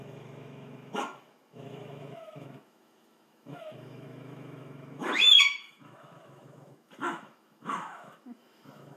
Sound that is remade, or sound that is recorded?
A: remade